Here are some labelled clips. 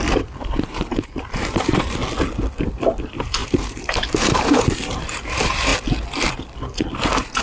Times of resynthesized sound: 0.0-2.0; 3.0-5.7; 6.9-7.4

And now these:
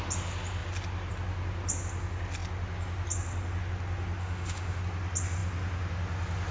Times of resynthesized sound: 4.2-4.8

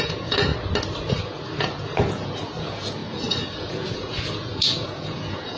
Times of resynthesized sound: 0.0-0.5; 1.6-5.6

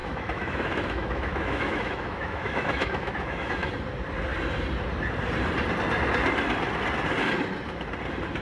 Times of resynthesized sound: 0.0-3.7

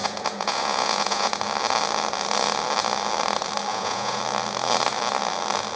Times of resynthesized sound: 0.0-1.3; 3.7-4.2

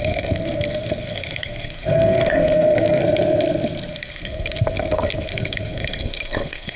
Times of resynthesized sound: 0.0-3.0; 3.9-6.8

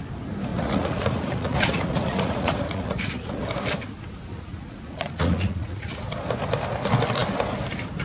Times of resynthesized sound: 0.5-3.4; 4.3-6.0